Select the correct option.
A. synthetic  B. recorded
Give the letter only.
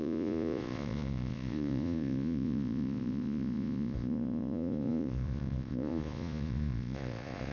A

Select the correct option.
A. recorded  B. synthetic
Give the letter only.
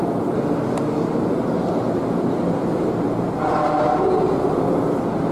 A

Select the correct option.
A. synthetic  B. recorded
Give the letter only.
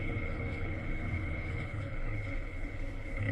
A